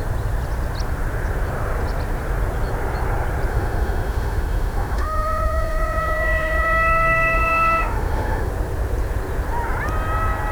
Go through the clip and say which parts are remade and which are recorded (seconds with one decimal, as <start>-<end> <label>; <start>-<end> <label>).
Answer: 0.0-3.5 recorded; 3.5-8.5 remade; 8.5-10.5 recorded